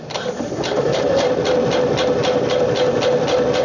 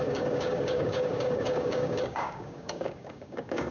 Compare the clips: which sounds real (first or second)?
first